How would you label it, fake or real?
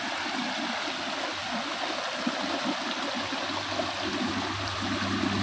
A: real